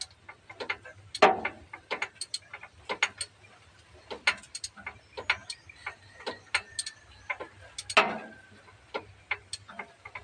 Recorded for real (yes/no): yes